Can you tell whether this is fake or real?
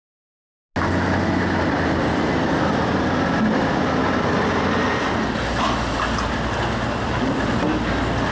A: real